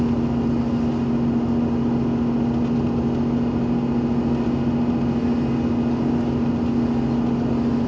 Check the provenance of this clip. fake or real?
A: real